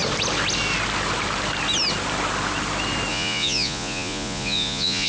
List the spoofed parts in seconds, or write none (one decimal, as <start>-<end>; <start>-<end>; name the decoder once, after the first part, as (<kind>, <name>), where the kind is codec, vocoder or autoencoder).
3.1-5.1 (vocoder, Vocos)